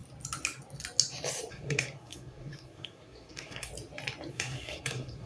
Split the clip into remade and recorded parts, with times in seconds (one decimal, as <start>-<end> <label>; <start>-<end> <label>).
0.0-1.5 recorded; 1.5-3.7 remade; 3.7-4.3 recorded; 4.3-5.3 remade

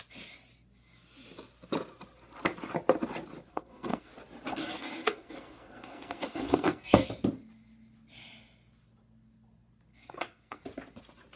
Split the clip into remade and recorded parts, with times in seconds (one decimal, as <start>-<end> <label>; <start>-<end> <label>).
0.0-3.5 recorded; 3.5-4.1 remade; 4.1-4.5 recorded; 4.5-7.1 remade; 7.1-9.9 recorded; 9.9-10.6 remade; 10.6-11.4 recorded

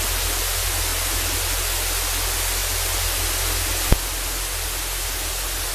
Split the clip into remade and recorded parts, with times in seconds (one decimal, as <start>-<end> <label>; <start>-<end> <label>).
0.0-5.7 recorded

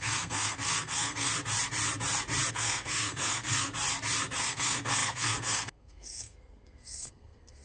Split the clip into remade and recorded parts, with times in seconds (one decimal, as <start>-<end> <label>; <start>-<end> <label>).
0.0-1.3 remade; 1.3-2.5 recorded; 2.5-3.7 remade; 3.7-4.4 recorded; 4.4-7.6 remade

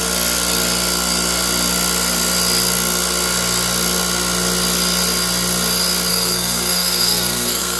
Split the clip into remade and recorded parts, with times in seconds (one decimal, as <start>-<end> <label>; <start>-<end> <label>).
0.0-6.1 recorded; 6.1-7.8 remade